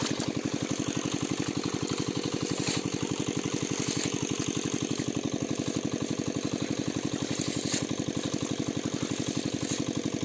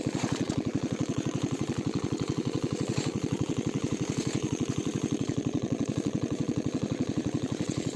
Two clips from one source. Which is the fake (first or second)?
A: second